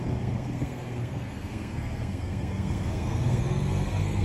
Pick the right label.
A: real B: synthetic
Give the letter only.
B